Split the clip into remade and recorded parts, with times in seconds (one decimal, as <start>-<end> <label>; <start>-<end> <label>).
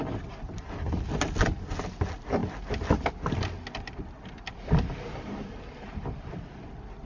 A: 0.0-7.1 recorded